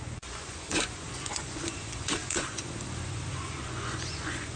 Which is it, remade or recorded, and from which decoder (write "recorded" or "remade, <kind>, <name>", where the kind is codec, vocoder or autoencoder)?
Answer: remade, vocoder, Vocos